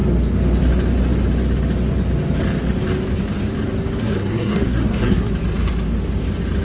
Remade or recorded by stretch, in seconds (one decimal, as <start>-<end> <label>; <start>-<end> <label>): 0.0-4.0 recorded; 4.0-5.3 remade; 5.3-6.6 recorded